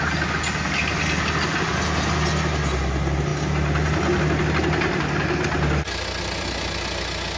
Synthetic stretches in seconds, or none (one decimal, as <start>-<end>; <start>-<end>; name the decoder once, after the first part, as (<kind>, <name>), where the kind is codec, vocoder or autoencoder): none